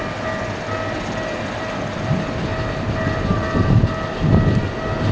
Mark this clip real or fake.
real